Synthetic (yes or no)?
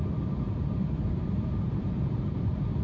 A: yes